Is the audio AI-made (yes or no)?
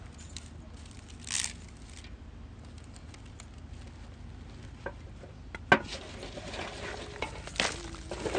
no